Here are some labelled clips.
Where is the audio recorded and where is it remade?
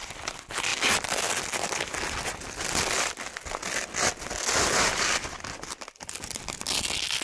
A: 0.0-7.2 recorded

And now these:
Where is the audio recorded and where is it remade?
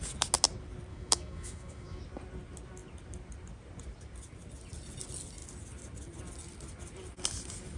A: 0.0-0.9 recorded; 0.9-2.0 remade; 2.0-7.8 recorded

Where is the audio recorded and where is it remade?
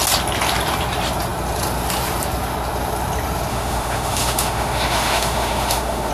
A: 0.0-3.5 recorded; 3.5-6.1 remade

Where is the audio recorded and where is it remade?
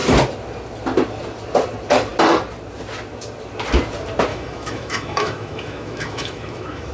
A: 0.0-4.3 recorded; 4.3-6.9 remade